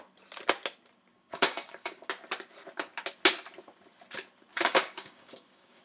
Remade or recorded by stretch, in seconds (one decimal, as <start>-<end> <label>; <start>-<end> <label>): 0.0-1.1 recorded; 1.1-2.1 remade; 2.1-4.5 recorded; 4.5-5.8 remade